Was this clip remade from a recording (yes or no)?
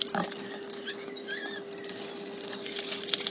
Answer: no